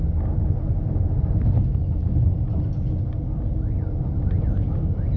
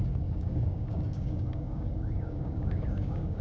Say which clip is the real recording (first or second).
first